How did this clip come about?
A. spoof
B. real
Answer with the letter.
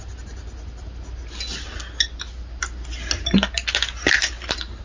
B